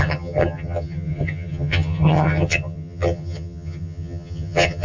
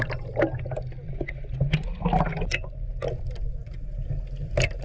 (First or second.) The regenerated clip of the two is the first